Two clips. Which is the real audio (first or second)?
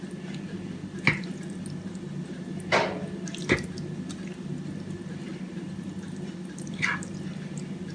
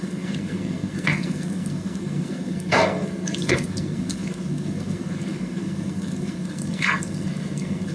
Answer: first